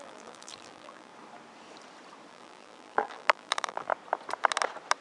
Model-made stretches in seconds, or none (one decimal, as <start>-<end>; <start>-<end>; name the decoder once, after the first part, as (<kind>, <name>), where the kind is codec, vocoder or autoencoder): 0.0-1.1 (vocoder, BigVGAN v2); 2.3-3.9